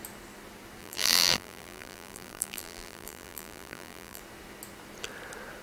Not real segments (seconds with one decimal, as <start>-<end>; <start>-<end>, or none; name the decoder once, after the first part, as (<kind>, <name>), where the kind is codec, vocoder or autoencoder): 0.8-4.2 (vocoder, BigVGAN v2)

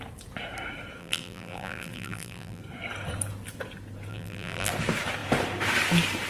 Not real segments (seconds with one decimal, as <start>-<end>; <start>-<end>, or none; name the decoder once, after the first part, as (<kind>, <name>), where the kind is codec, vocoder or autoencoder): 1.0-2.6 (vocoder, BigVGAN v2); 4.1-4.7

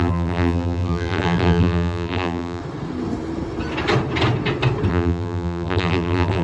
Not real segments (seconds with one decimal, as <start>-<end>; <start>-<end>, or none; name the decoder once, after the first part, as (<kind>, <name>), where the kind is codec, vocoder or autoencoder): 0.0-2.6 (vocoder, BigVGAN v2); 4.9-6.4

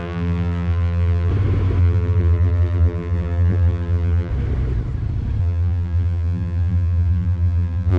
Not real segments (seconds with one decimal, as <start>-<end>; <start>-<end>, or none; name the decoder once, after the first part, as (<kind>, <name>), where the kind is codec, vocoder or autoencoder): 0.0-1.3 (vocoder, BigVGAN v2); 1.8-4.3; 5.4-8.0

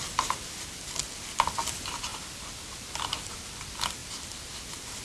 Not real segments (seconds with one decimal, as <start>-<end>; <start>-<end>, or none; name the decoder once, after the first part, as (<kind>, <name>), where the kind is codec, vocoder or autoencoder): 2.1-3.0 (vocoder, BigVGAN v2); 4.0-5.0